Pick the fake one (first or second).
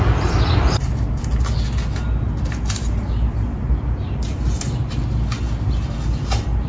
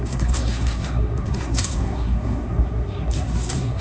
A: second